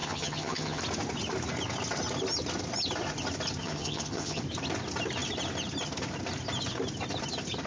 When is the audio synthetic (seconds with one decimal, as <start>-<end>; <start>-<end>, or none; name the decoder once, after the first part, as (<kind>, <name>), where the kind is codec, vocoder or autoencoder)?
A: 0.0-0.8 (vocoder, HiFi-GAN); 3.6-4.4